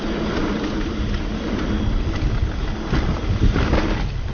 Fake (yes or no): no